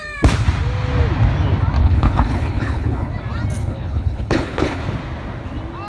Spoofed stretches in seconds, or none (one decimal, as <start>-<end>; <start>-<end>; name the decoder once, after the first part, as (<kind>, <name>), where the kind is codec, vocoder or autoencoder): 1.8-3.1 (codec, HILCodec); 3.6-4.8